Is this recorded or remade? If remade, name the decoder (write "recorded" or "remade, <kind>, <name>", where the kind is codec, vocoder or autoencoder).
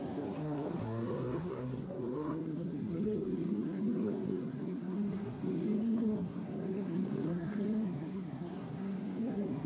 remade, codec, SNAC